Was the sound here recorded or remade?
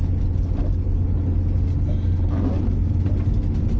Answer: recorded